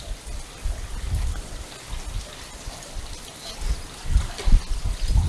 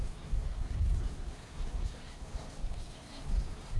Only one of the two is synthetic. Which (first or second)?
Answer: second